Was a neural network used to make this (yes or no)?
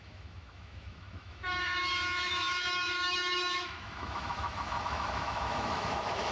yes